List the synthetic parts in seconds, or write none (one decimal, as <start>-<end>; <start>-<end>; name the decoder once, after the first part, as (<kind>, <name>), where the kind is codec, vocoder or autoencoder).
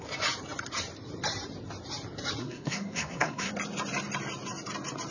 2.4-3.5 (codec, SNAC)